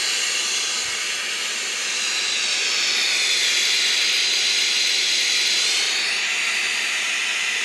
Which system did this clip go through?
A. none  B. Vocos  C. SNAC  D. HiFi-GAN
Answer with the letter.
A